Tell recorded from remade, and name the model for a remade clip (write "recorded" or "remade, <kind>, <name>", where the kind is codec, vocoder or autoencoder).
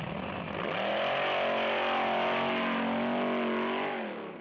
recorded